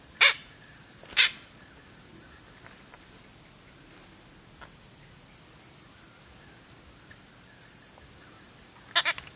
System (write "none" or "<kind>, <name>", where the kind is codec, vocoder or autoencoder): none